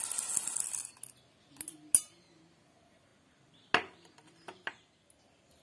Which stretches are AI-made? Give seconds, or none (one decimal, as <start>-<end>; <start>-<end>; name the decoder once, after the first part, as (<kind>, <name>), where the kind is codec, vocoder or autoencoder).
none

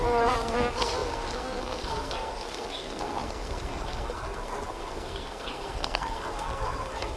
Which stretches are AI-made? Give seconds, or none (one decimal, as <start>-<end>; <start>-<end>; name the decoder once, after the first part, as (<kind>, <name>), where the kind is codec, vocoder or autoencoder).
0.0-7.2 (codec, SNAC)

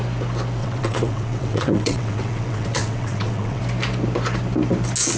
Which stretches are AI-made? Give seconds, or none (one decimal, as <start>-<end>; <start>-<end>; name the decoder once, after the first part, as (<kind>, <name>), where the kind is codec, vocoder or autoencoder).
0.6-3.6 (vocoder, WaveNeXt)

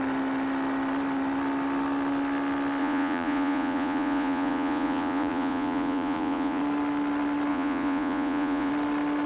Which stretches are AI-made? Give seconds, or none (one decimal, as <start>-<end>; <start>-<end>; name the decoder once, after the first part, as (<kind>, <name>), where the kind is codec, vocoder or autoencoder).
2.8-6.6 (vocoder, Vocos); 7.5-8.7

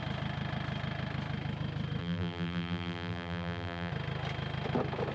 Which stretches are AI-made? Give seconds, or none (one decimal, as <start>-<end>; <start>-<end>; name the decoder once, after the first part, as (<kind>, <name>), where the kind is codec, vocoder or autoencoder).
2.0-3.9 (vocoder, BigVGAN v2)

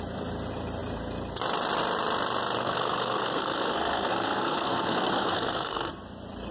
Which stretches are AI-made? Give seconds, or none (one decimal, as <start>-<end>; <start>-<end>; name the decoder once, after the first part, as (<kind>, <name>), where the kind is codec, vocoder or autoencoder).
2.6-5.9 (codec, SNAC)

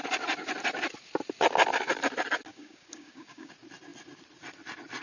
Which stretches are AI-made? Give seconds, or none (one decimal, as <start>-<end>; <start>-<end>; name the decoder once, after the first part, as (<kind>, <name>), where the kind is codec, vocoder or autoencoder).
2.5-3.5 (codec, DAC)

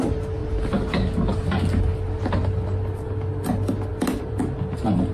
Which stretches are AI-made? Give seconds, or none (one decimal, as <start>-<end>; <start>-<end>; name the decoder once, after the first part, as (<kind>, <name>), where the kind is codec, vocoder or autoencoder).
3.9-4.4 (vocoder, BigVGAN v2)